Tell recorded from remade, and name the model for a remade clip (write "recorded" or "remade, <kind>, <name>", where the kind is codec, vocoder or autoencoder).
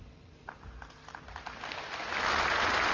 recorded